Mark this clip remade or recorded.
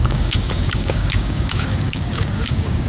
remade